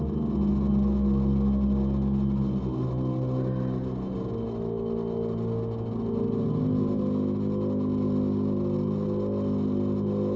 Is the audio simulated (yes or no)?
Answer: no